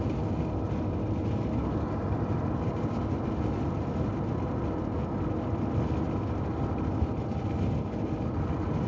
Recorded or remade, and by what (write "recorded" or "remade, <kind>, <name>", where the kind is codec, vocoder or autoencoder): recorded